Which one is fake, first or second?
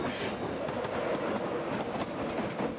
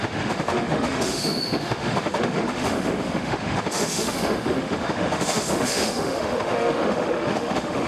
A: second